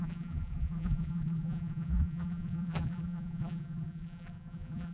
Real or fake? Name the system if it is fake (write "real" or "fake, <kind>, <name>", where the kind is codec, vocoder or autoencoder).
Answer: fake, vocoder, BigVGAN v2